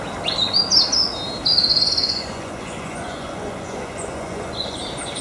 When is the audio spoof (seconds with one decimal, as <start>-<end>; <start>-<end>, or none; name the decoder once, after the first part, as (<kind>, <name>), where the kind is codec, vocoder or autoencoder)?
1.7-4.8 (vocoder, Vocos)